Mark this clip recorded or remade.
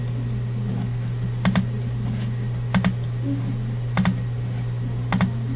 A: recorded